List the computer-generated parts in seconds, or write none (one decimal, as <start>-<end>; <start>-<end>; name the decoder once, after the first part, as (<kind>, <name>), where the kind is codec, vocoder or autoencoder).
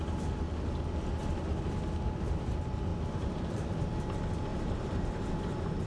2.9-3.8 (vocoder, BigVGAN v2); 4.5-5.3